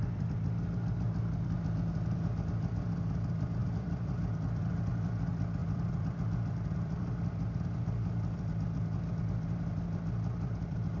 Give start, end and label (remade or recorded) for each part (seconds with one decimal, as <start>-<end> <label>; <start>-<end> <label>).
0.0-3.6 recorded; 3.6-4.3 remade; 4.3-5.6 recorded; 5.6-7.0 remade; 7.0-11.0 recorded